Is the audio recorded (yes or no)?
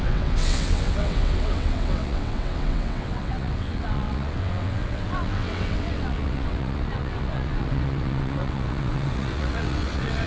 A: no